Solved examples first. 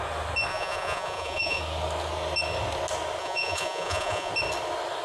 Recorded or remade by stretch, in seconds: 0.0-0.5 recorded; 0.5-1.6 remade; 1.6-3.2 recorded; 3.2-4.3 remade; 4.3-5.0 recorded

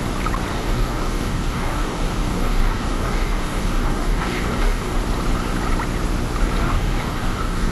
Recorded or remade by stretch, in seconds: 0.0-0.5 recorded; 0.5-5.0 remade; 5.0-6.6 recorded; 6.6-7.7 remade

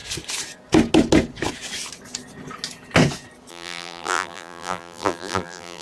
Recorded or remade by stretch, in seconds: 0.0-3.5 recorded; 3.5-5.8 remade

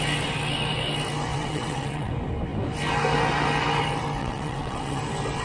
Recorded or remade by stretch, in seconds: 0.0-1.3 recorded; 1.3-2.1 remade; 2.1-4.2 recorded; 4.2-5.0 remade; 5.0-5.4 recorded

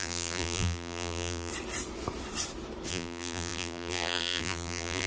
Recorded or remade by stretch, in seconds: 0.0-1.5 remade; 1.5-2.9 recorded; 2.9-5.1 remade